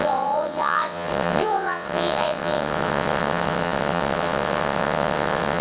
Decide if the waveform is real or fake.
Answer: fake